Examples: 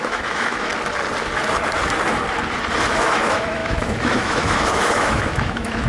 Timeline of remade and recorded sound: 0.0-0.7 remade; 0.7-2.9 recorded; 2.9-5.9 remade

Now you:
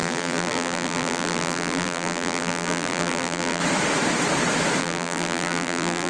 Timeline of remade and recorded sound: 0.0-3.6 remade; 3.6-4.8 recorded; 4.8-6.1 remade

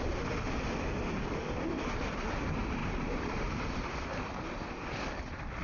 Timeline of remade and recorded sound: 0.0-5.6 recorded

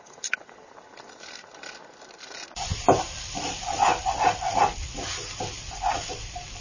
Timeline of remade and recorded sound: 0.0-6.6 recorded

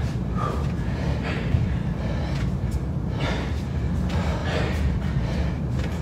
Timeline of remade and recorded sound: 0.0-6.0 recorded